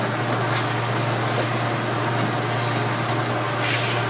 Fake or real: real